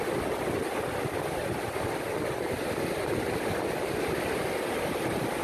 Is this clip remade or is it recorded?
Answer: recorded